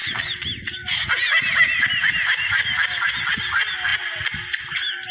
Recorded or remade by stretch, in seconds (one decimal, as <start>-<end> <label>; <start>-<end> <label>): 0.0-5.1 recorded